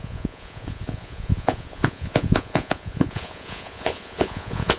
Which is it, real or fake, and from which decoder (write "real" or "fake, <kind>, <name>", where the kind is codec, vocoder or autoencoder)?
fake, vocoder, Vocos